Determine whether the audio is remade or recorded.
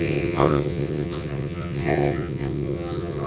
remade